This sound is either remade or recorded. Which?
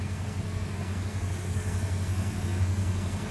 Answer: remade